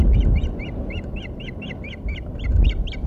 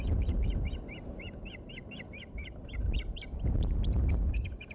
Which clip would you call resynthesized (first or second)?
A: second